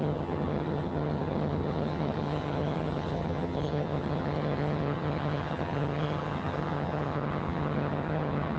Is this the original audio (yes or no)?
no